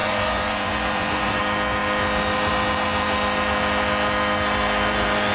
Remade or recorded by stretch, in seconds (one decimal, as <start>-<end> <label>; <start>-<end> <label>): 0.0-1.4 remade; 1.4-5.3 recorded